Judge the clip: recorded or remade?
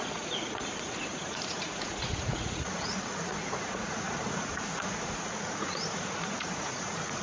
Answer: remade